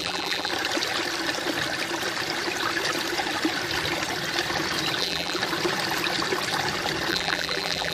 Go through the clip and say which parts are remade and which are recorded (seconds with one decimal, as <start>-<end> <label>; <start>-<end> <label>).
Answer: 0.0-0.5 remade; 0.5-5.0 recorded; 5.0-5.4 remade; 5.4-7.1 recorded; 7.1-7.9 remade